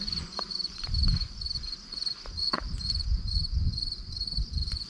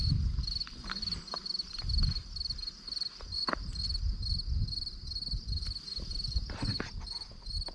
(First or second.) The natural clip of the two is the second